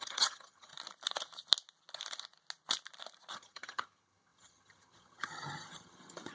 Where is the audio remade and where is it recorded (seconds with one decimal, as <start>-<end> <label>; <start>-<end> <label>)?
0.0-0.7 remade; 0.7-3.3 recorded; 3.3-6.3 remade